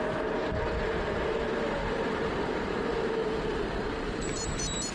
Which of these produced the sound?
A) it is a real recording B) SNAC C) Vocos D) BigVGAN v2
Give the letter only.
D